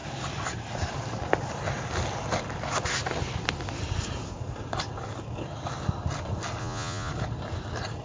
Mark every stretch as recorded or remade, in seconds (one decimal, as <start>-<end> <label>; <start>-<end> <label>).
0.0-6.6 recorded; 6.6-7.1 remade; 7.1-8.0 recorded